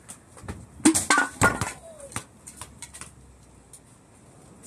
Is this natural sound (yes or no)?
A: yes